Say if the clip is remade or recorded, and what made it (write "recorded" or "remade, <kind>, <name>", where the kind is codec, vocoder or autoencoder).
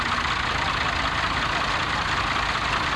recorded